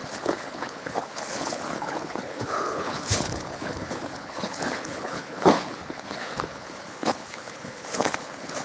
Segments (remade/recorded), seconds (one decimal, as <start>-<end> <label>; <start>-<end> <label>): 0.0-8.6 remade